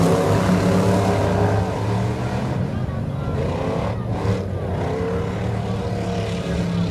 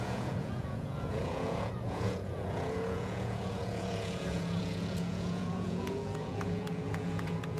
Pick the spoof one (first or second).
second